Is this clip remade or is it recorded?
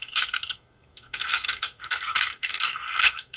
remade